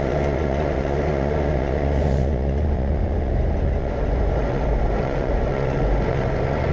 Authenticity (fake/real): fake